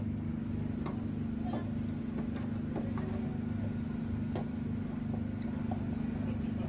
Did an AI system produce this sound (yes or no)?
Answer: no